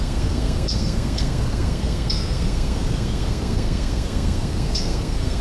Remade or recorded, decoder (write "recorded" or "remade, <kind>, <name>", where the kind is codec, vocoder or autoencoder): remade, codec, SNAC